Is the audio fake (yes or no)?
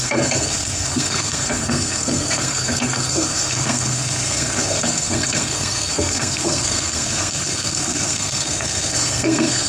yes